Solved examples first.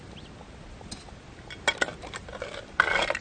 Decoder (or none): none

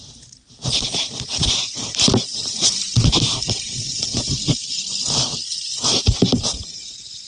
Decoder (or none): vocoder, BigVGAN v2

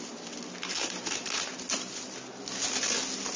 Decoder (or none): none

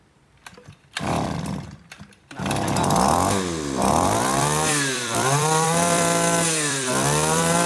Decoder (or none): vocoder, BigVGAN v2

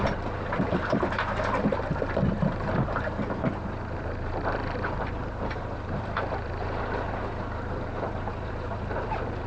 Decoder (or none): vocoder, BigVGAN v2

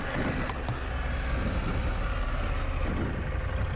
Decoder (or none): none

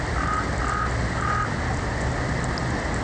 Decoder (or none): none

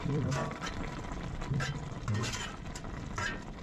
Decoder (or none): vocoder, BigVGAN v2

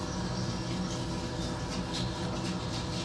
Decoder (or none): none